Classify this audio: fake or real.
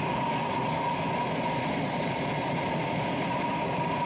real